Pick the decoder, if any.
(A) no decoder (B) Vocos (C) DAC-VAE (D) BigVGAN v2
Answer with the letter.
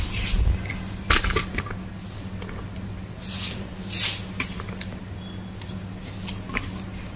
A